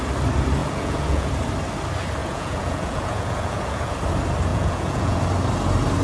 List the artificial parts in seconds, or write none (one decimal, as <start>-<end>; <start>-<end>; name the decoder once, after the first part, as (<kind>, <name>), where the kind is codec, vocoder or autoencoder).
0.6-1.3 (vocoder, Vocos); 2.2-3.9; 4.5-5.2